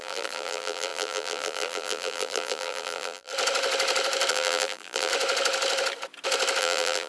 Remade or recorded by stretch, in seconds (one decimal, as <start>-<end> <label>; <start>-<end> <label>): 0.0-3.3 remade; 3.3-4.3 recorded; 4.3-5.1 remade; 5.1-6.6 recorded; 6.6-7.1 remade